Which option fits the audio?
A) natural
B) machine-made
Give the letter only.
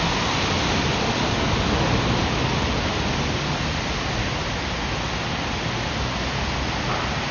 A